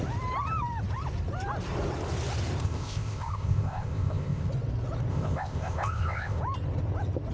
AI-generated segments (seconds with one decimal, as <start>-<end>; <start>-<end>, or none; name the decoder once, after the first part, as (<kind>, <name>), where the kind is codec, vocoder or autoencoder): 2.6-4.5 (codec, ZipCodec); 5.1-6.4